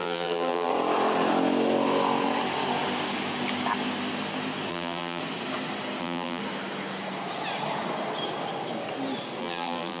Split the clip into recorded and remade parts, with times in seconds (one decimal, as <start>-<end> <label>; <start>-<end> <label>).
0.0-0.7 remade; 0.7-4.7 recorded; 4.7-5.2 remade; 5.2-6.0 recorded; 6.0-6.4 remade; 6.4-9.4 recorded; 9.4-10.0 remade